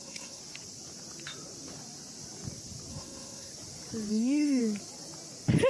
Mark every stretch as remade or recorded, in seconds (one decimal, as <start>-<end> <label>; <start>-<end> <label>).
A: 0.0-0.4 remade; 0.4-2.9 recorded; 2.9-3.5 remade; 3.5-4.1 recorded; 4.1-4.6 remade; 4.6-5.7 recorded